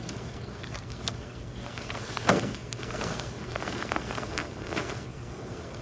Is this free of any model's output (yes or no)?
no